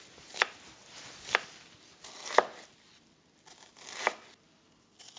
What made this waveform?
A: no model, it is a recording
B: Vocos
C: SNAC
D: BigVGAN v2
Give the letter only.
A